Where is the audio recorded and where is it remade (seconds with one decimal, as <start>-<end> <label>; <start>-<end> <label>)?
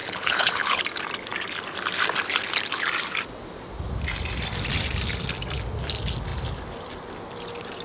0.0-0.8 remade; 0.8-7.8 recorded